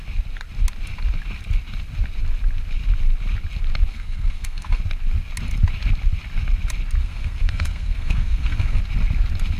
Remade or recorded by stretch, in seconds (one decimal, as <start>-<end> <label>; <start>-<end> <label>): 0.0-3.9 recorded; 3.9-4.8 remade; 4.8-7.0 recorded; 7.0-8.8 remade; 8.8-9.6 recorded